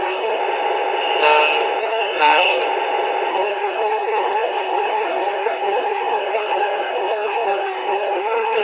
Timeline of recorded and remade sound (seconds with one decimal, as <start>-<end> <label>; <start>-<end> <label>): 0.0-0.4 remade; 0.4-1.8 recorded; 1.8-2.6 remade; 2.6-3.3 recorded; 3.3-8.6 remade